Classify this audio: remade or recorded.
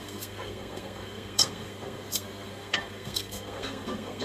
remade